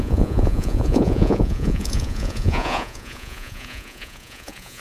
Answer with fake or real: fake